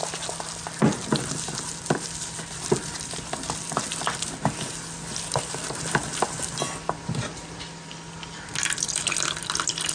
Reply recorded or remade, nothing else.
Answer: recorded